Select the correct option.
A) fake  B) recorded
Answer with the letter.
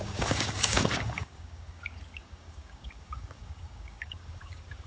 A